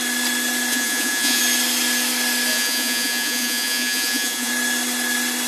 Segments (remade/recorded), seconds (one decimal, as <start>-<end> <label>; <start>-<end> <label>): 0.0-0.7 recorded; 0.7-1.4 remade; 1.4-2.5 recorded; 2.5-4.5 remade; 4.5-5.5 recorded